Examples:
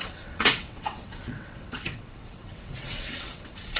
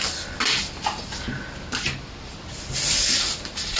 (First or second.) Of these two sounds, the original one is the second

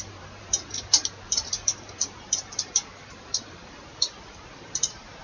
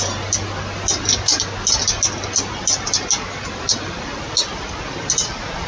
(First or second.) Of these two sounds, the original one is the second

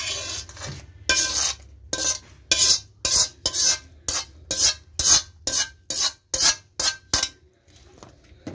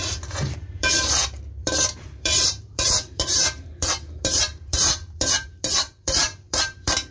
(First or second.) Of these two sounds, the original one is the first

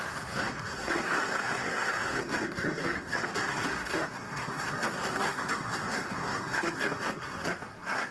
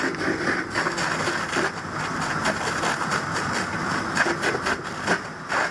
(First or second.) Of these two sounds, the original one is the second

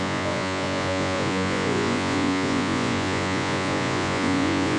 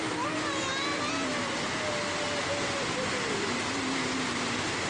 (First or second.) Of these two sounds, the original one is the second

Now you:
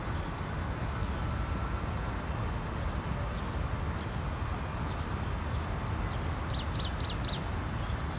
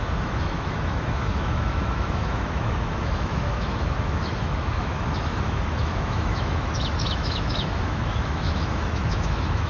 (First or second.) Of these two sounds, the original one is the first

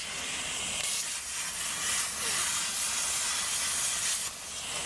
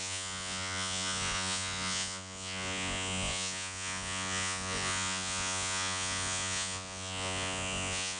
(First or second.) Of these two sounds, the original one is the first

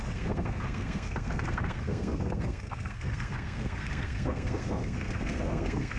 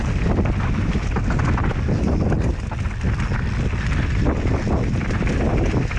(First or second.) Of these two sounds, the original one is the second